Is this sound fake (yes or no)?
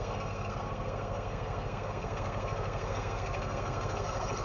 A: yes